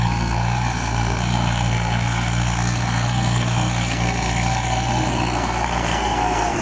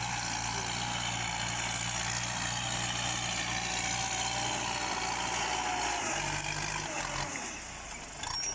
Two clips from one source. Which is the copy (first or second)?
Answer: first